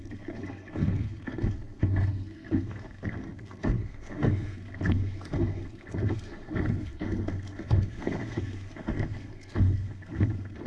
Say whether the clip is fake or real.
fake